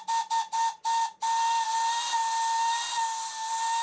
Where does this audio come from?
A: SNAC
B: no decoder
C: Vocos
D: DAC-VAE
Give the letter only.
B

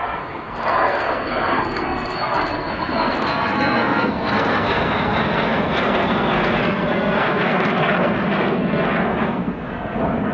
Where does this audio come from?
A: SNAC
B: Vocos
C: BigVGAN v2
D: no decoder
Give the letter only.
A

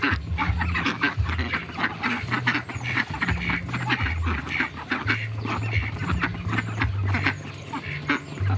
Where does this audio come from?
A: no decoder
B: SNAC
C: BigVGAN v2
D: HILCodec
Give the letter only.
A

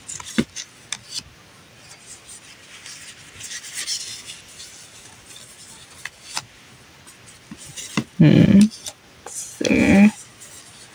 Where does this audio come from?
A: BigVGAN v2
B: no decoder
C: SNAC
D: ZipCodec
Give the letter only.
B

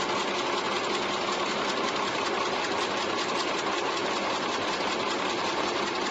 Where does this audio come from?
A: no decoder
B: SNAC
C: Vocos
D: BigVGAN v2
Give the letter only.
A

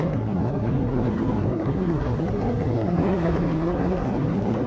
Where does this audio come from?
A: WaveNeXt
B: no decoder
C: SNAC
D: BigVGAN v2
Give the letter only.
C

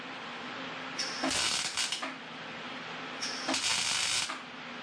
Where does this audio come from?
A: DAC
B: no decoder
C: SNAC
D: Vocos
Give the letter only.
B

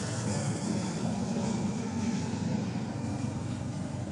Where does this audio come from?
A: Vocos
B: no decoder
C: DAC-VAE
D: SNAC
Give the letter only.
D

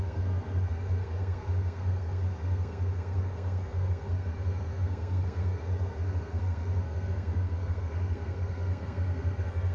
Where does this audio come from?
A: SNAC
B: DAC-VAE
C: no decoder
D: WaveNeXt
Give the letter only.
A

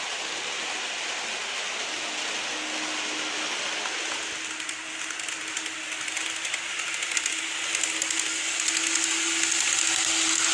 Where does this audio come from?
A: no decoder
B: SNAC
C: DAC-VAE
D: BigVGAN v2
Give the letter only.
A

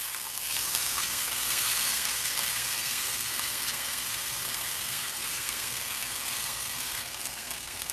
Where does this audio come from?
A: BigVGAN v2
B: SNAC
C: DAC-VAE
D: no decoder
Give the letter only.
B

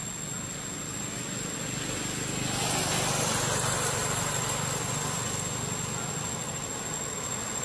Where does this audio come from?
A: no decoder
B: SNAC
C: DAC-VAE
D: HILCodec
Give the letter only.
A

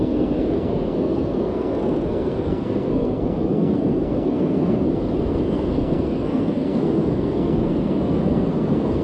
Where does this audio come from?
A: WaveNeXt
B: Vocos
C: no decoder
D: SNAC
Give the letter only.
D